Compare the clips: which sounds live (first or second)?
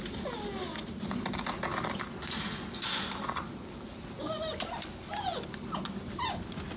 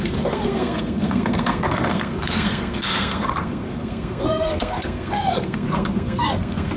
first